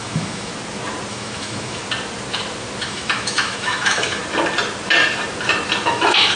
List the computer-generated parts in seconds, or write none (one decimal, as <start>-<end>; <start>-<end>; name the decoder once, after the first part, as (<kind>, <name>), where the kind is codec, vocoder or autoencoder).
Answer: 0.0-0.5 (autoencoder, DAC-VAE); 1.1-1.8; 2.8-4.2; 5.9-6.4